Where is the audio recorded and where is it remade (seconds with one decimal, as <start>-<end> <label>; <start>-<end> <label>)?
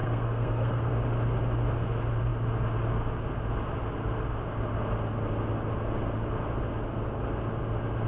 0.0-0.9 remade; 0.9-8.1 recorded